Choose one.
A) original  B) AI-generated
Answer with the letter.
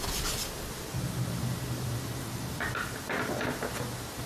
A